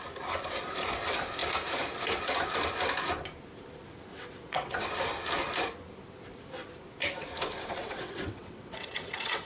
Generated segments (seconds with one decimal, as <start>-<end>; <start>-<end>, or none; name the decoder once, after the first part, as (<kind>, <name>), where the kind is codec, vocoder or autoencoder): 4.1-4.9 (vocoder, WaveNeXt); 7.8-9.5